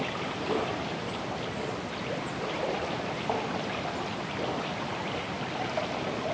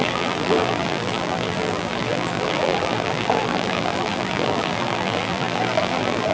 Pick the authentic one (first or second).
first